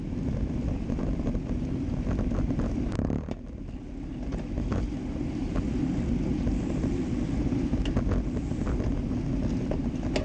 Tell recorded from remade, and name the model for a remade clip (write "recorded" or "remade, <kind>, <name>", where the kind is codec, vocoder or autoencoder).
recorded